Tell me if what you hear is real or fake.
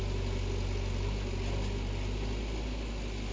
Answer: real